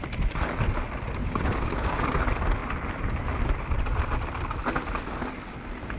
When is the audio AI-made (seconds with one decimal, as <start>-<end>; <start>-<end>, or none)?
1.2-2.2